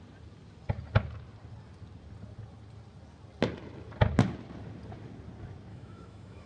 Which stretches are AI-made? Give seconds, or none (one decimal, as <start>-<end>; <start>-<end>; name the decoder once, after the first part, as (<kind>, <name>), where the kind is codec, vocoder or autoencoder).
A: 5.7-6.5 (autoencoder, DAC-VAE)